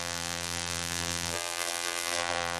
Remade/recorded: remade